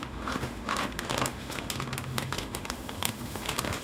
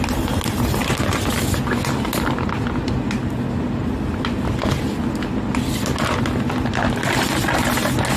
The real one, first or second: second